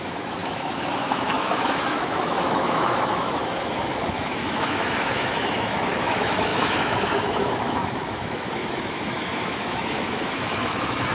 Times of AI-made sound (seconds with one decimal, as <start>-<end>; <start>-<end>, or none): 0.0-11.1